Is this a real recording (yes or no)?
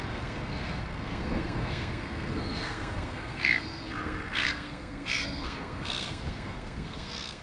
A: no